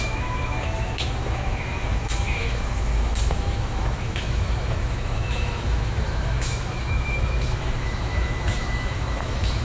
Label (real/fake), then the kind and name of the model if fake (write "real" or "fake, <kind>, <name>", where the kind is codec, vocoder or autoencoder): fake, autoencoder, DAC-VAE